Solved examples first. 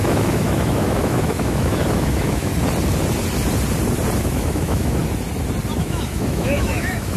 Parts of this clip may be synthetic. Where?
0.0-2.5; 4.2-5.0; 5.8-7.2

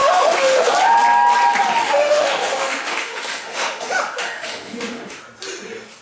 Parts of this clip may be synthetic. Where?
0.0-0.7; 1.8-5.2

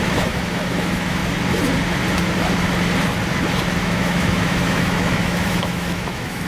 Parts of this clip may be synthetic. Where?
0.0-1.2; 3.8-6.5

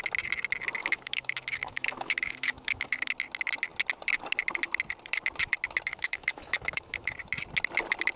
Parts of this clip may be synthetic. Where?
0.8-3.1; 5.9-7.1

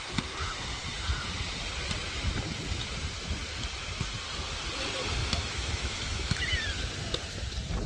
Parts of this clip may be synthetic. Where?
5.2-6.5

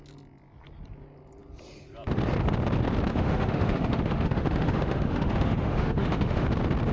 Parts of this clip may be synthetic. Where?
3.1-6.5

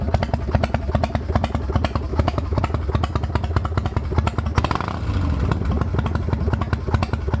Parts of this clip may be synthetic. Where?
2.1-2.6